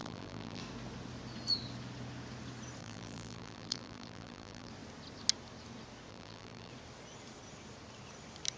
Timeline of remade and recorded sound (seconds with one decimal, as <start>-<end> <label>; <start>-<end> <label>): 0.0-0.6 remade; 0.6-2.8 recorded; 2.8-4.7 remade; 4.7-6.1 recorded; 6.1-6.7 remade; 6.7-8.6 recorded